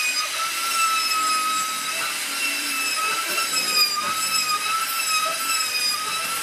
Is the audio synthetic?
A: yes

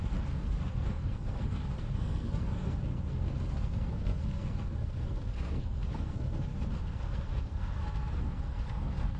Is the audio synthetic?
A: yes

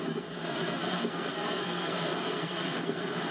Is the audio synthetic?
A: yes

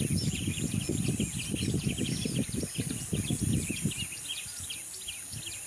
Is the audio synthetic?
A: no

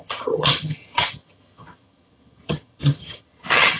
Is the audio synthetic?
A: yes